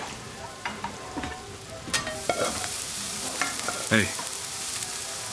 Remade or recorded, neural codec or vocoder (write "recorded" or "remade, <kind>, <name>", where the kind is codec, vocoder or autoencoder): remade, vocoder, BigVGAN v2